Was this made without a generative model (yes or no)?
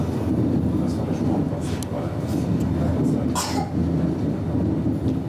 yes